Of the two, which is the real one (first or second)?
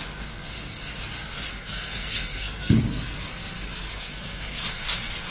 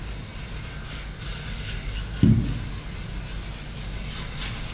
second